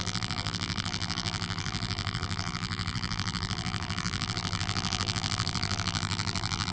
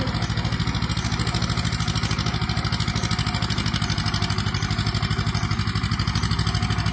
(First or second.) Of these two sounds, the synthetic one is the first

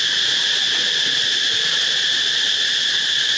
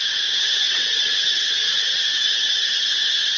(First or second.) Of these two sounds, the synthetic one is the second